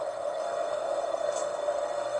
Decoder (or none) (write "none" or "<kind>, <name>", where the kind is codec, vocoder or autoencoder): codec, SNAC